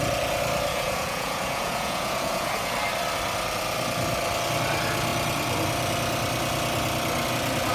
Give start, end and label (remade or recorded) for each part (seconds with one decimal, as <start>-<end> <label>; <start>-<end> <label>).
0.0-0.7 recorded; 0.7-2.5 remade; 2.5-7.7 recorded